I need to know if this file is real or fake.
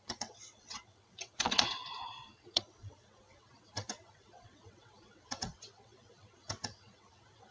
fake